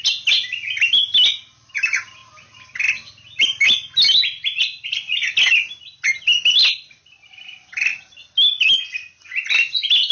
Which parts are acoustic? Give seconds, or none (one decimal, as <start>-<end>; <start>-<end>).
0.0-10.1